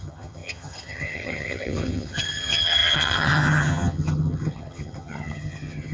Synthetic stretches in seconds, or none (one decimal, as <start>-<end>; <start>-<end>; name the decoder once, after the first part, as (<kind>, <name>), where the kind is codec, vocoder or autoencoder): 0.0-5.9 (vocoder, HiFi-GAN)